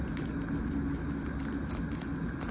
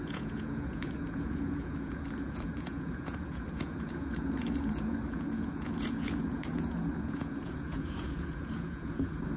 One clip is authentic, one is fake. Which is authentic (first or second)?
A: first